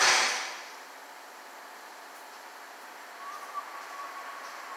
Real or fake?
real